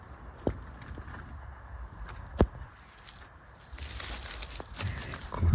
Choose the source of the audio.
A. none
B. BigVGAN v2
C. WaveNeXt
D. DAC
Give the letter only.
A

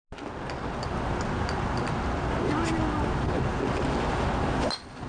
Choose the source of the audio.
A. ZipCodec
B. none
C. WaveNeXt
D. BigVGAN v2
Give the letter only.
B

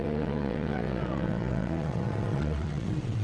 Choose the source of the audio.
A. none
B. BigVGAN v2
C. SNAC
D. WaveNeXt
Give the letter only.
D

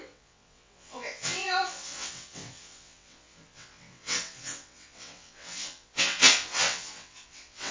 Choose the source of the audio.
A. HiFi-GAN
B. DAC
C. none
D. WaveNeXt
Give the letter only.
D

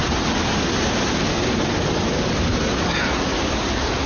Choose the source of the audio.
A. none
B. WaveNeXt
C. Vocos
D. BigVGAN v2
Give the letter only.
A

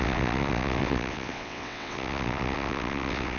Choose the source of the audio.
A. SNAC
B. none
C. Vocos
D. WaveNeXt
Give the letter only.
D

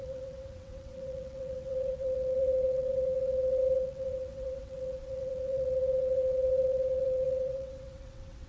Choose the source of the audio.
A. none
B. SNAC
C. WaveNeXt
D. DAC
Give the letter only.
C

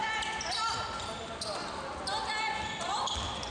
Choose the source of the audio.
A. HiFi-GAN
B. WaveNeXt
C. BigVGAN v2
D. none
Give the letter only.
D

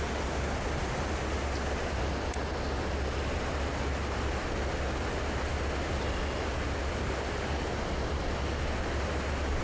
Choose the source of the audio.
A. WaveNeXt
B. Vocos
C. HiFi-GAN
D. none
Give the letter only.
D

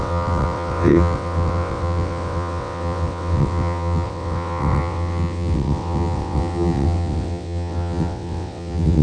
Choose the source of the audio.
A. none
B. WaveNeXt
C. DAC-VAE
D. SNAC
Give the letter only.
B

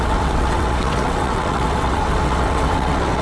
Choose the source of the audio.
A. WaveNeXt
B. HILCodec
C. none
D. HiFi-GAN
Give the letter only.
A